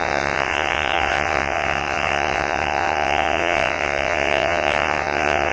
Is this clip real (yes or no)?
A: no